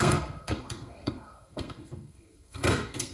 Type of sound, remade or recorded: remade